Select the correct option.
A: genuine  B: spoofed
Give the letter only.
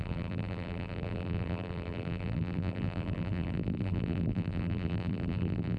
B